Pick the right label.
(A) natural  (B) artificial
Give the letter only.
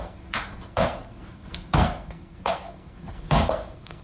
B